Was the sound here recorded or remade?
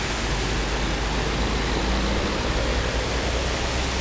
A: recorded